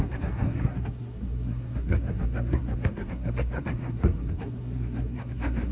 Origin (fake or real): fake